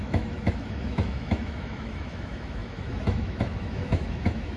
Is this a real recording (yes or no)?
no